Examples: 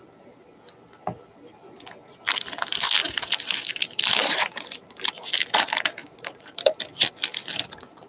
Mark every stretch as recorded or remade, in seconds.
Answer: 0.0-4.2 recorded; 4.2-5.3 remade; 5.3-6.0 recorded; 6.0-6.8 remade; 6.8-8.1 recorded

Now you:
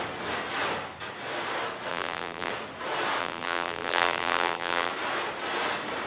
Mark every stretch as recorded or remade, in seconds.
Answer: 0.0-1.9 recorded; 1.9-2.5 remade; 2.5-3.2 recorded; 3.2-4.9 remade; 4.9-6.1 recorded

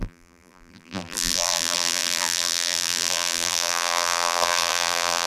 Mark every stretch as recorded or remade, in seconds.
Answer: 0.0-5.3 remade